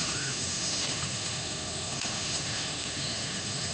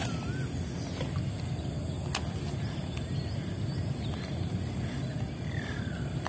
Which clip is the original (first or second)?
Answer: second